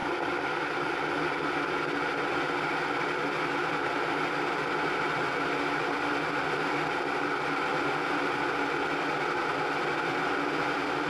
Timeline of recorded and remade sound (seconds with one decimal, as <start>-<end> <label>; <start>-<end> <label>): 0.0-11.1 recorded